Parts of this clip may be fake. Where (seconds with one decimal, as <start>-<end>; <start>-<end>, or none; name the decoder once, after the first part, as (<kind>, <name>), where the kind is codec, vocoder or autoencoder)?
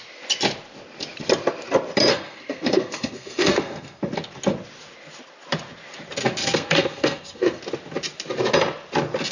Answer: 2.1-4.0 (codec, SNAC); 6.4-7.6